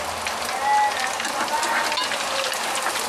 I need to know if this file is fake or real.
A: real